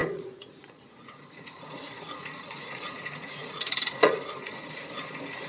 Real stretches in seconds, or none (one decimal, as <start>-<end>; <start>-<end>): none